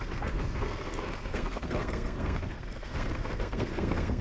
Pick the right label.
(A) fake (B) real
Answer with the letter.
A